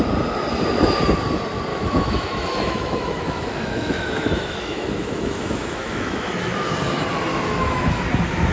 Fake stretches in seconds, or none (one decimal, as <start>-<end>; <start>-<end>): 1.7-6.7; 7.3-8.0